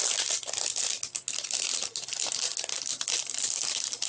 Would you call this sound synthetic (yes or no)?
no